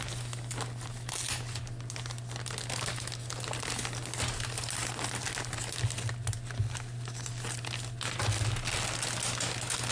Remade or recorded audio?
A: recorded